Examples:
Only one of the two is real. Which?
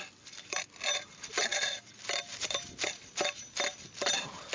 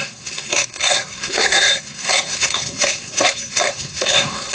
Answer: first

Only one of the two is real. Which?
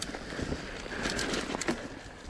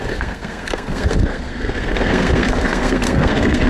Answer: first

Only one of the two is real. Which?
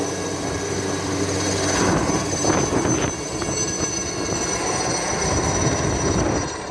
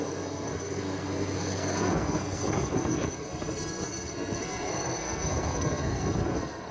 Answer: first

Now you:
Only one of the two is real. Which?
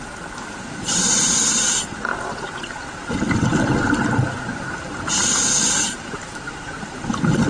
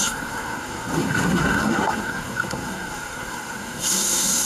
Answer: first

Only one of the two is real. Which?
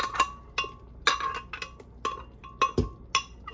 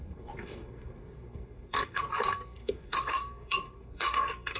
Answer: first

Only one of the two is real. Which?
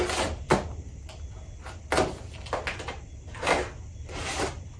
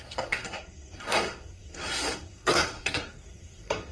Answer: first